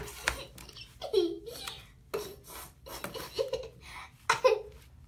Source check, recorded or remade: recorded